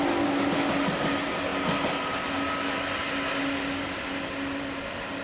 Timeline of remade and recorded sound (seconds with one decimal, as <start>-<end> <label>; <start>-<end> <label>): 0.0-5.2 recorded